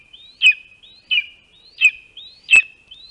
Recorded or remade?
recorded